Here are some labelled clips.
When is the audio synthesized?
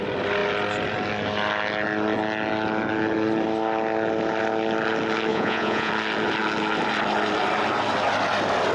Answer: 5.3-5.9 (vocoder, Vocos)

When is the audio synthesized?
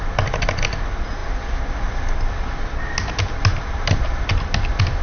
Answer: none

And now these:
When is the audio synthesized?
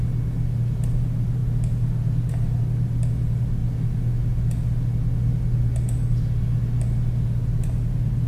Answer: none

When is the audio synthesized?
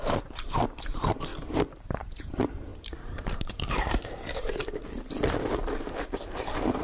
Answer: 0.0-6.8 (vocoder, BigVGAN v2)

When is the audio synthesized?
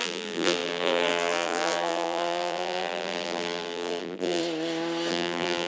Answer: 0.0-4.4 (vocoder, BigVGAN v2); 5.1-5.7